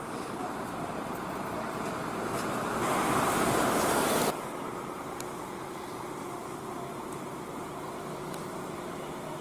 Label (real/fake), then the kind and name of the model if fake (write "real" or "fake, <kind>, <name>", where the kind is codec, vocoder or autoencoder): fake, vocoder, BigVGAN v2